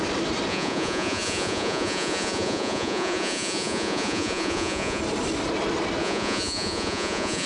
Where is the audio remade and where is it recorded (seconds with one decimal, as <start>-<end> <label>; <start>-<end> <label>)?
0.0-0.5 recorded; 0.5-5.0 remade; 5.0-6.0 recorded; 6.0-7.5 remade